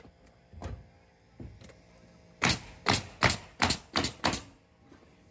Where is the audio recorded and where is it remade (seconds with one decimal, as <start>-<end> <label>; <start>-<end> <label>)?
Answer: 0.0-5.3 recorded